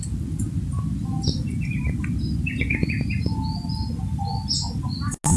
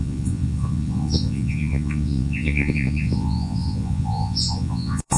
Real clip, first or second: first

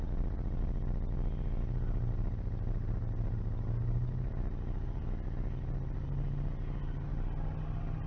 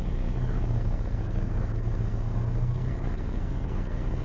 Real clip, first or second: first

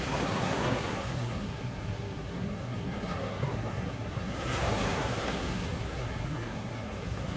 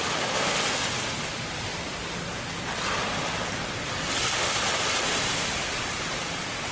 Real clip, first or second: second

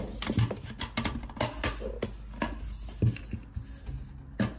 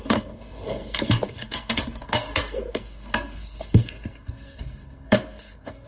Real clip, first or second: first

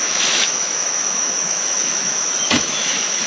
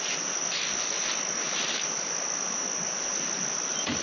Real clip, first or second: second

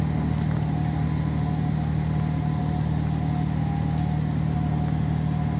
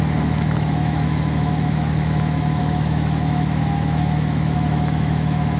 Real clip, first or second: first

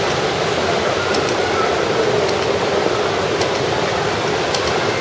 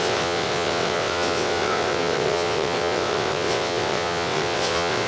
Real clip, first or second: first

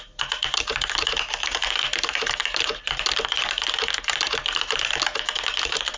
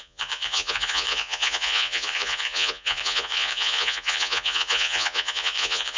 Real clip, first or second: first